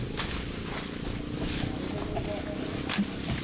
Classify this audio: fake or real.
real